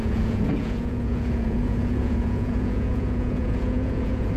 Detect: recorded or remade remade